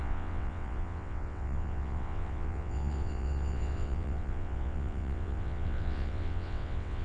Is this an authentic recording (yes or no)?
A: no